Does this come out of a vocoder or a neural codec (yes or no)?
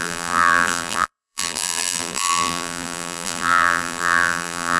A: yes